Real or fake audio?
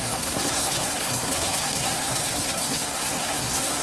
fake